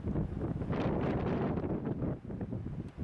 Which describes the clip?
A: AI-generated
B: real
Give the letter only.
B